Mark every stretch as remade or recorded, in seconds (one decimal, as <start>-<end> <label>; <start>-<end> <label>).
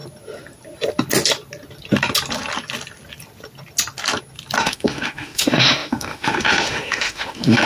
0.0-4.6 recorded; 4.6-7.7 remade